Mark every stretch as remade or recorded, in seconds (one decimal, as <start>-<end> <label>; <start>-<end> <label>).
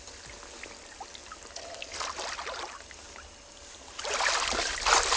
0.0-5.2 recorded